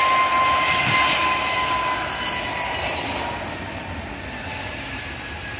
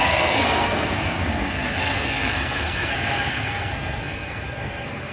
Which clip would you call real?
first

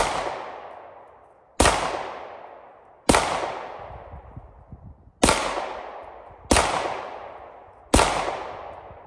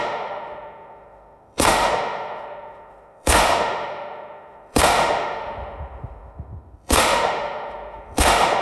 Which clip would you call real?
first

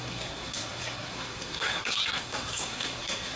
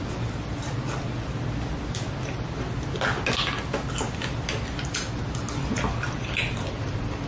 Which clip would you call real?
second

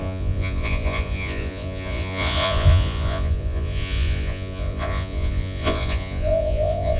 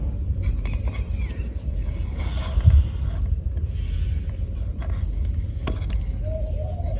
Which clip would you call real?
second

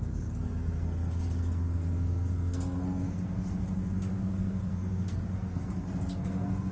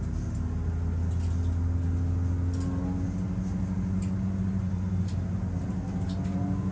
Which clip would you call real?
second